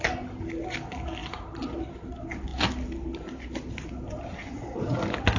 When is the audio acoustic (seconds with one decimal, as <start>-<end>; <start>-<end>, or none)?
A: 0.0-1.2; 2.1-5.4